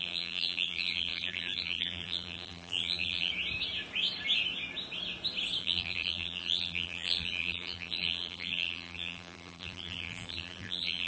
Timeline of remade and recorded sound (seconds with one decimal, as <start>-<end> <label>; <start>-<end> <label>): 0.0-3.3 remade; 3.3-5.6 recorded; 5.6-11.1 remade